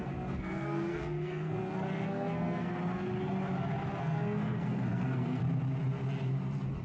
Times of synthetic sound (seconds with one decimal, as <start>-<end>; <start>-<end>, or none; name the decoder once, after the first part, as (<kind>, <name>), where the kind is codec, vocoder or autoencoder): 0.0-2.7 (codec, SNAC); 4.0-5.4

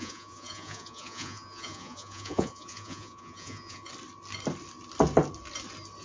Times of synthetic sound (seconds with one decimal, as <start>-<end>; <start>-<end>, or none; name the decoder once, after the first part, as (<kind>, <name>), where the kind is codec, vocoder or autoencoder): 0.0-3.9 (vocoder, Vocos)

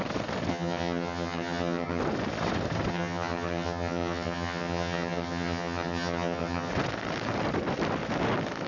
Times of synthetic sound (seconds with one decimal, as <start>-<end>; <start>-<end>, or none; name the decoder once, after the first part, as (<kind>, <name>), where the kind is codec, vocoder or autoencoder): 0.5-2.0 (vocoder, HiFi-GAN); 2.9-6.7

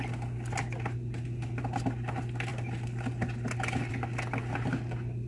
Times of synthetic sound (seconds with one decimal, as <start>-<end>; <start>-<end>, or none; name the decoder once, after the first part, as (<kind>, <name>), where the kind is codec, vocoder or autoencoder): none

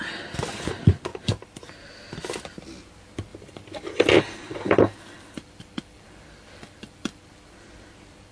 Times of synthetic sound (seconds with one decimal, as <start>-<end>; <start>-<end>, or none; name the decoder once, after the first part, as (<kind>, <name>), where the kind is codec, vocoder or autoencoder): 1.1-1.9 (vocoder, BigVGAN v2); 3.3-7.2

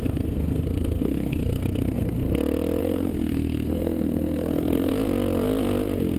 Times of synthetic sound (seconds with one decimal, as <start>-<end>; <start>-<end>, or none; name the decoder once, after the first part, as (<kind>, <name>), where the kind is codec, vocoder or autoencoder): 0.0-2.2 (codec, SNAC); 2.8-4.9